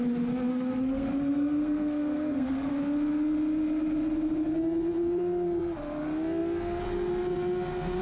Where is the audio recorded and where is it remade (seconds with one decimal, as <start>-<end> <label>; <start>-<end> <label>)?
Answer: 0.0-0.5 recorded; 0.5-2.7 remade; 2.7-8.0 recorded